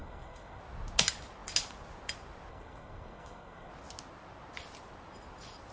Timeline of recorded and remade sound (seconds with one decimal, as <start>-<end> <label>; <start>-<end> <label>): 0.0-0.6 remade; 0.6-2.5 recorded; 2.5-3.7 remade; 3.7-5.7 recorded